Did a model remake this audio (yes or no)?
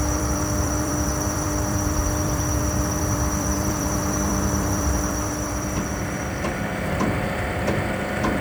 yes